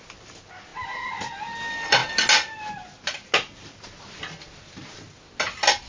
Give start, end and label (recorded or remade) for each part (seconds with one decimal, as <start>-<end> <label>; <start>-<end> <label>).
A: 0.0-5.9 recorded